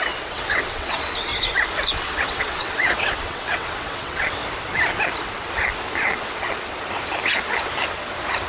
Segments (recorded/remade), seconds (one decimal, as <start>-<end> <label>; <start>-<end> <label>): 0.0-1.3 remade; 1.3-2.2 recorded; 2.2-4.4 remade; 4.4-8.5 recorded